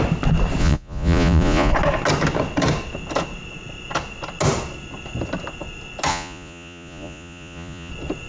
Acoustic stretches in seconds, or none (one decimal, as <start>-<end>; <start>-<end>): 0.0-0.6; 1.7-6.1; 7.9-8.3